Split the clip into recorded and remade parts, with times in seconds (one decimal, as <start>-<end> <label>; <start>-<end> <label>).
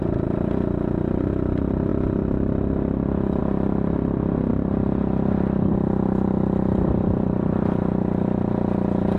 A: 0.0-9.2 recorded